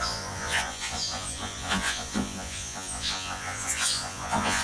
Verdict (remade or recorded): remade